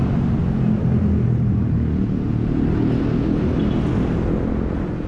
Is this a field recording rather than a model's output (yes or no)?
yes